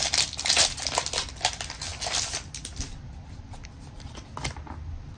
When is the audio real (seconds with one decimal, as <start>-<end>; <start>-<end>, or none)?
0.0-5.2